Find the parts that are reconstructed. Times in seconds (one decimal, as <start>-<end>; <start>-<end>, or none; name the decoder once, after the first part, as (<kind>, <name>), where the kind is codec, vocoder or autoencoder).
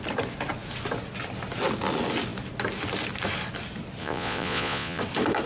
4.0-5.0 (vocoder, Vocos)